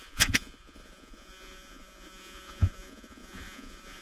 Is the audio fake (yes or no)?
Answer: yes